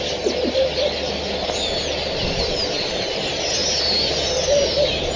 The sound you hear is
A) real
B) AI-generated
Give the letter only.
A